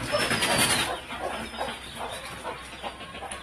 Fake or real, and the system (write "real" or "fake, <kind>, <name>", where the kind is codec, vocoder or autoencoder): real